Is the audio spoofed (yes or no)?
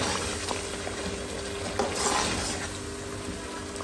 no